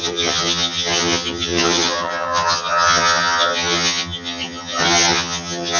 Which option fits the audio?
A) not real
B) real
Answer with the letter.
A